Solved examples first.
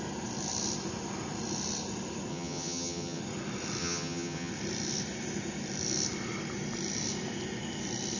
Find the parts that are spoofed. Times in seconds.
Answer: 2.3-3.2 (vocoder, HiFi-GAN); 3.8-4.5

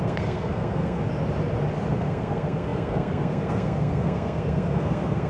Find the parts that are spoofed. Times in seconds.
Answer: 0.0-1.0 (codec, SNAC); 1.9-5.3

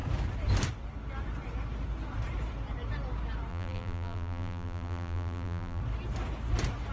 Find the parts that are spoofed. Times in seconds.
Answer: 3.5-5.8 (vocoder, BigVGAN v2)

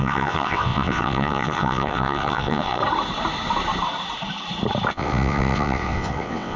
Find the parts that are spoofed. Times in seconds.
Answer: 0.0-2.8 (vocoder, WaveNeXt); 4.9-6.6

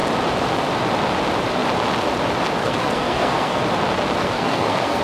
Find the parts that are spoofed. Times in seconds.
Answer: 2.6-3.6 (codec, SNAC); 4.2-5.0

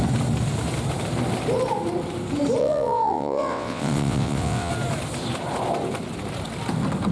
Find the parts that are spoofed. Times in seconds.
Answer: 2.6-4.7 (vocoder, WaveNeXt)

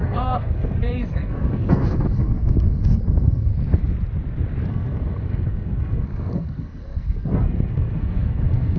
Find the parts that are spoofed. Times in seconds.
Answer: 0.0-3.5 (codec, SNAC); 4.7-8.8